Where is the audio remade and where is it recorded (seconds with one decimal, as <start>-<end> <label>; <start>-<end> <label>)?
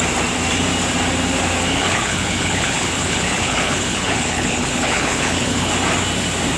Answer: 0.0-1.7 recorded; 1.7-5.7 remade; 5.7-6.6 recorded